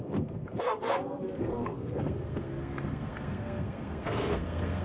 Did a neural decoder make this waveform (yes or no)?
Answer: yes